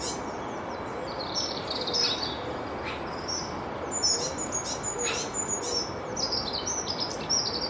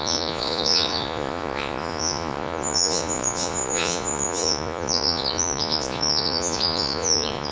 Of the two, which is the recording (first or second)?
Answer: first